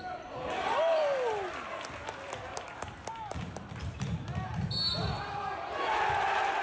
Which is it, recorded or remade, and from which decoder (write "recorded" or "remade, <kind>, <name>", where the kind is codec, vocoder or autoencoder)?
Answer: recorded